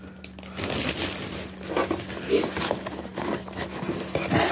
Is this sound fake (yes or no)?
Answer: no